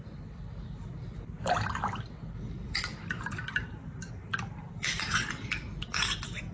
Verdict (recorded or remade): remade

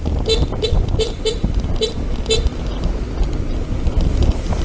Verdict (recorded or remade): remade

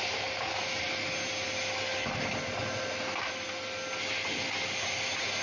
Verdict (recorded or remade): recorded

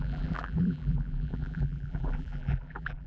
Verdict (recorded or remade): remade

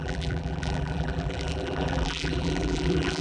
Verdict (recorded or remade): remade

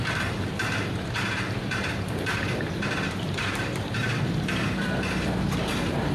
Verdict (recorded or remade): remade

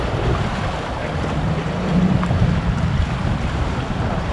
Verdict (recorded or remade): remade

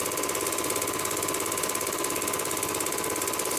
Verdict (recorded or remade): recorded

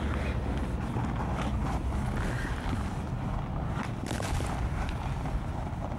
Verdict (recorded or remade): recorded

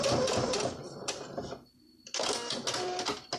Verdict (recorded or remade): recorded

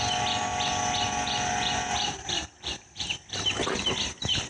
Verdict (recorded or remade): recorded